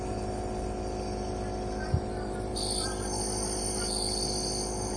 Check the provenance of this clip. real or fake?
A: real